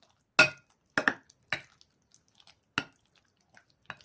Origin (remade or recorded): recorded